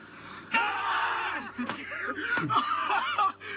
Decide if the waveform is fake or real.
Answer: fake